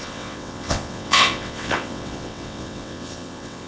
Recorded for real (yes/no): no